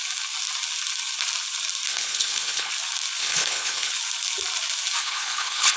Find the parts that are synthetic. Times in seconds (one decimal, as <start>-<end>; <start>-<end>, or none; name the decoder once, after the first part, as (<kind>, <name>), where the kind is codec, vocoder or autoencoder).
1.9-2.7 (codec, HILCodec); 3.2-3.9; 5.0-5.8